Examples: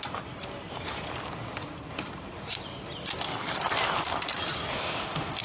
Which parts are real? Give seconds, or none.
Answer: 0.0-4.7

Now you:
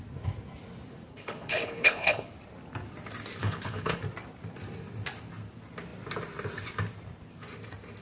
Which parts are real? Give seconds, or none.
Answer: 0.0-1.1; 2.3-3.4; 4.0-8.0

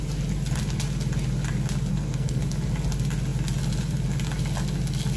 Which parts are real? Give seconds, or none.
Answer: 0.0-1.9; 2.4-5.2

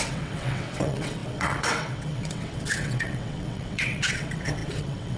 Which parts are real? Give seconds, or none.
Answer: none

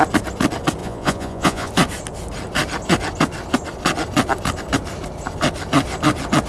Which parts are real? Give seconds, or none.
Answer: 0.0-0.8; 1.7-6.5

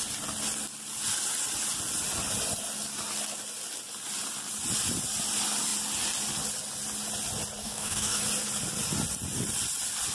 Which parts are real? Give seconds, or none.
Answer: 0.0-7.6; 8.2-10.1